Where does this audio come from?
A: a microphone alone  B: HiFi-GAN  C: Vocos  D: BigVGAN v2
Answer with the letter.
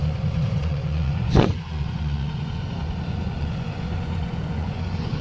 C